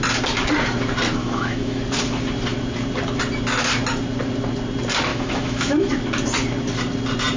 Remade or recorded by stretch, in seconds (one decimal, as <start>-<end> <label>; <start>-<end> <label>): 0.0-1.2 recorded; 1.2-1.8 remade; 1.8-5.1 recorded; 5.1-5.9 remade; 5.9-7.4 recorded